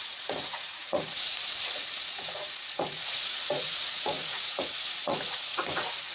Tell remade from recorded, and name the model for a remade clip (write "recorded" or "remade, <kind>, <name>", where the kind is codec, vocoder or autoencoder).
remade, vocoder, Vocos